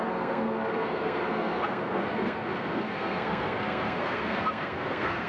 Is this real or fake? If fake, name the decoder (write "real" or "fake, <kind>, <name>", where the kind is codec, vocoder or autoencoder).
fake, codec, SNAC